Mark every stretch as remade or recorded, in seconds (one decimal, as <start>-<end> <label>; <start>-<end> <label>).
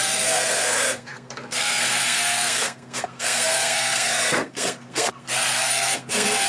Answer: 0.0-6.5 remade